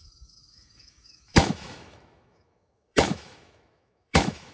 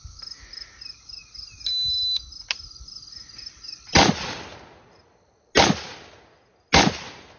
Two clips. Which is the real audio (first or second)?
second